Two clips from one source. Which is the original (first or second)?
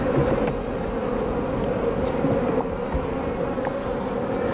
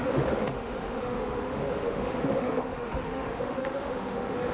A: first